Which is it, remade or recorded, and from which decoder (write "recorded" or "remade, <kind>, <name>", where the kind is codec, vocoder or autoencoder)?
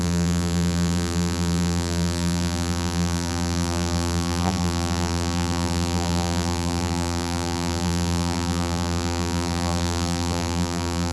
remade, vocoder, BigVGAN v2